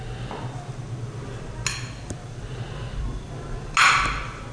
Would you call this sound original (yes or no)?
yes